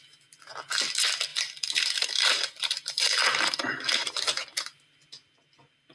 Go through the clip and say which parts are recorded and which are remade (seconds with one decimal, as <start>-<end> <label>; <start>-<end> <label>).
0.0-1.3 recorded; 1.3-4.8 remade; 4.8-5.9 recorded